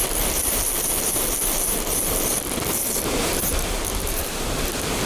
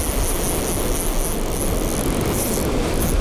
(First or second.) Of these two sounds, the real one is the second